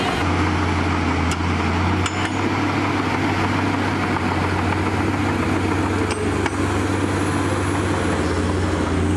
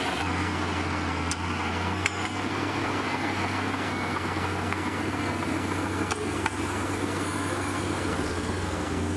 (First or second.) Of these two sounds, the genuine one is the first